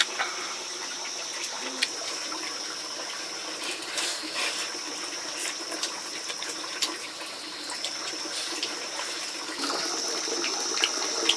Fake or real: fake